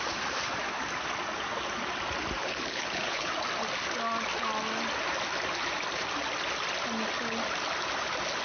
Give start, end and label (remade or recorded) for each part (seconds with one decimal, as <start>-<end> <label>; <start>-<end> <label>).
0.0-2.4 recorded; 2.4-3.3 remade; 3.3-8.4 recorded